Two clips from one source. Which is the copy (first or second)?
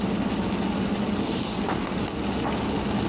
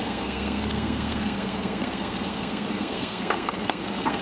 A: second